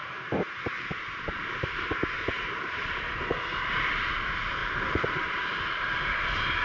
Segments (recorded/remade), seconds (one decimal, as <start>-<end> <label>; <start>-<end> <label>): 0.0-3.2 remade; 3.2-4.6 recorded; 4.6-5.6 remade; 5.6-6.6 recorded